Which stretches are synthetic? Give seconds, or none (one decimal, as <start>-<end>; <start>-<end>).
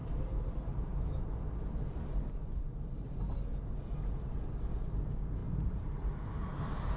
0.0-3.2; 5.4-6.0